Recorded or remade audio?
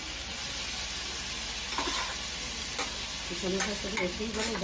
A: recorded